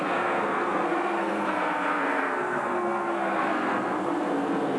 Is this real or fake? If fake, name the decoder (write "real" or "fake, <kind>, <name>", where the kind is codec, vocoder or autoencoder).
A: fake, codec, SNAC